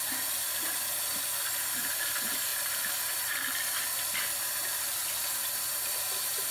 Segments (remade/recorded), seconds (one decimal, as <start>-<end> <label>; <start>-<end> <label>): 0.0-6.5 recorded

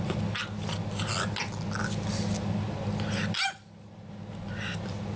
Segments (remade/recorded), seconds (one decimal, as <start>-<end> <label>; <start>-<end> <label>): 0.0-5.2 recorded

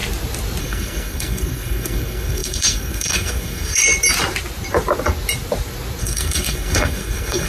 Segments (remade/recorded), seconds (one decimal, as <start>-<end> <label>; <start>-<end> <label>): 0.0-0.6 recorded; 0.6-3.8 remade; 3.8-6.0 recorded; 6.0-7.5 remade

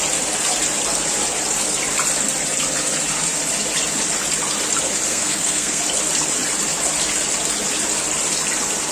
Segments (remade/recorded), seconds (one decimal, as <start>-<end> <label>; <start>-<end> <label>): 0.0-5.1 recorded; 5.1-5.8 remade; 5.8-8.9 recorded